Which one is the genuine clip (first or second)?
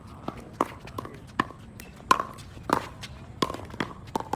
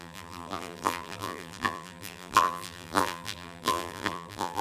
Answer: first